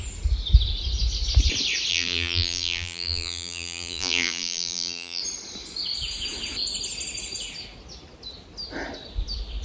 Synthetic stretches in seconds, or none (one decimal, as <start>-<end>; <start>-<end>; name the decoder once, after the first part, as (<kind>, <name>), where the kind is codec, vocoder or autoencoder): 1.9-5.2 (vocoder, BigVGAN v2)